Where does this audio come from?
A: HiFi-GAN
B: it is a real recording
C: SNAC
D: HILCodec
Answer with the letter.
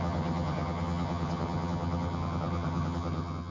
A